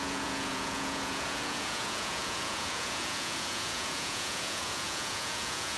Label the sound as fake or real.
fake